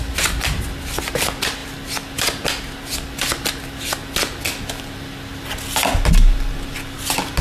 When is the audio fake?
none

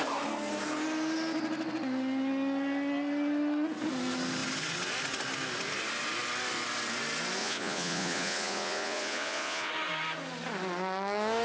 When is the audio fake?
7.4-9.7 (vocoder, Vocos)

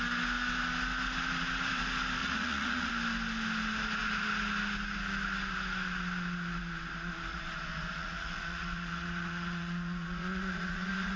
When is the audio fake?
2.2-2.9 (vocoder, Vocos); 7.3-11.2

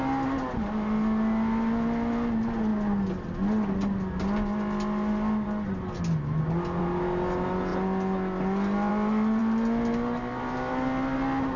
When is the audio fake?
none